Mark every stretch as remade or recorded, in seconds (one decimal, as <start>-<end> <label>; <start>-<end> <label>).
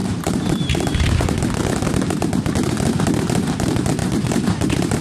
0.0-1.4 remade; 1.4-4.0 recorded; 4.0-5.0 remade